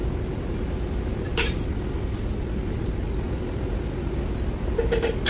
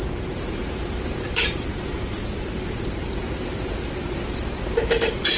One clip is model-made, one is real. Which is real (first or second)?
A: first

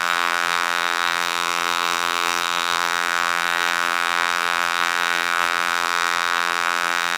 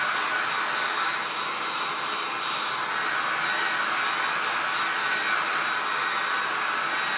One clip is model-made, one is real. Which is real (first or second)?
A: second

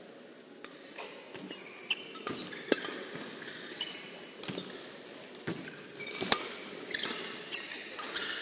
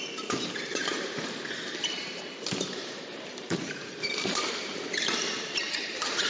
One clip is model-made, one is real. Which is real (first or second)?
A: first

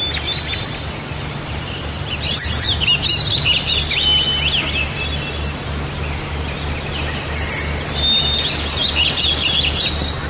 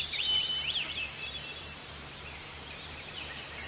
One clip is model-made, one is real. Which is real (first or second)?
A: first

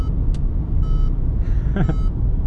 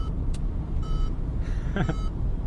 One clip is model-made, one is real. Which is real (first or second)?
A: first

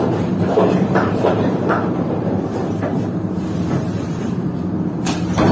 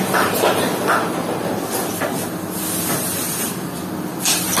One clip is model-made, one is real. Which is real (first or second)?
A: second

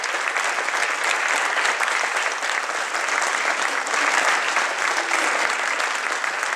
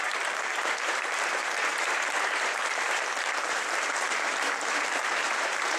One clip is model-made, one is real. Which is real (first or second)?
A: first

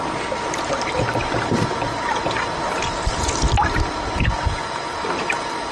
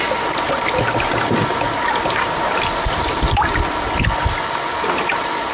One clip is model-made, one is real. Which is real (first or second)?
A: first